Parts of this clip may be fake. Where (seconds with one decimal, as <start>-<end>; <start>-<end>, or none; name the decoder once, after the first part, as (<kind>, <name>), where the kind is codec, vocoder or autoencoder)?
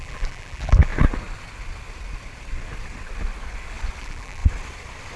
0.0-0.9 (vocoder, BigVGAN v2); 4.0-4.4